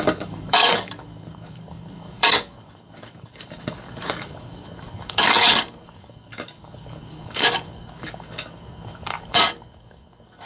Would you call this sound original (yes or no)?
no